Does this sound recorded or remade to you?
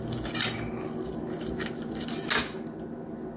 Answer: recorded